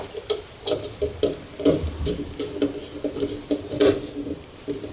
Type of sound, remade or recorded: recorded